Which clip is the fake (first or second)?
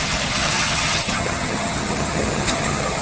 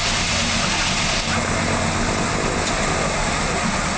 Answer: first